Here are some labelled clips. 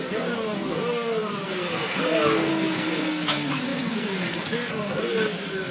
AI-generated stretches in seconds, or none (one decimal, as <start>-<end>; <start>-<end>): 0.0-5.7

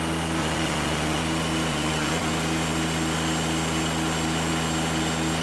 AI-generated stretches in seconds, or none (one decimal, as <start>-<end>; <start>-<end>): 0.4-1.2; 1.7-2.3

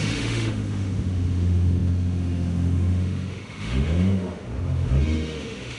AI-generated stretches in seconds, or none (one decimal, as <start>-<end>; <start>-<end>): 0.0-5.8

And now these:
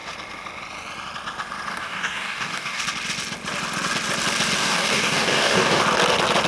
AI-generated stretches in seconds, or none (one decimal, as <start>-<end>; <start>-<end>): 1.7-2.8; 4.6-5.8

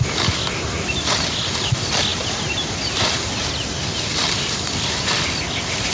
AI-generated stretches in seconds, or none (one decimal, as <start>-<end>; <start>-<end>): none

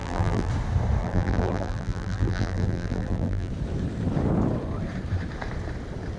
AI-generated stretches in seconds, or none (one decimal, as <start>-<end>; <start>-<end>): 0.0-0.5; 1.0-3.5

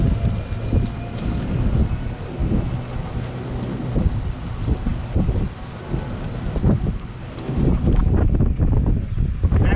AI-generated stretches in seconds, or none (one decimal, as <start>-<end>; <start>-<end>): none